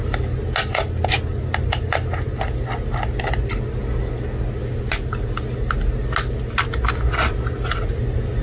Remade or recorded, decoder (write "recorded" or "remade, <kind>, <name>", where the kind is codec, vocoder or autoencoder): recorded